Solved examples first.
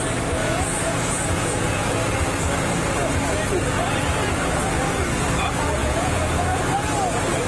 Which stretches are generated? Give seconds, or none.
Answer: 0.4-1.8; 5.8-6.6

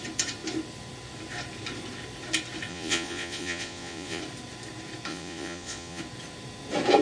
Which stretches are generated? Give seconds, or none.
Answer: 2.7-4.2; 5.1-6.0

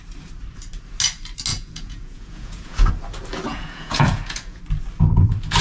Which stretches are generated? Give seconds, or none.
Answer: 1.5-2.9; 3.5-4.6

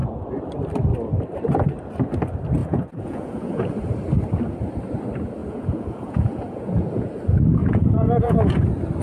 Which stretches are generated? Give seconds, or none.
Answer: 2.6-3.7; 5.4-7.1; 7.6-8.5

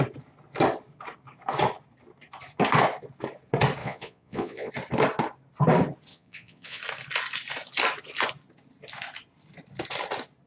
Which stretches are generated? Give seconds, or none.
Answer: 3.8-4.7; 6.1-6.8